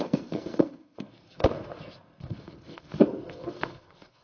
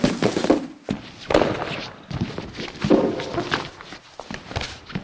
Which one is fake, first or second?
first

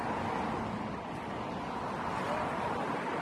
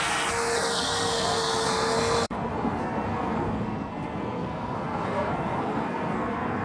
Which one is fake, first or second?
second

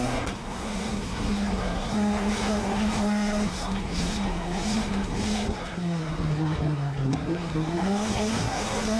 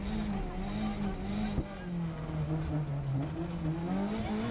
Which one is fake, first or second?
first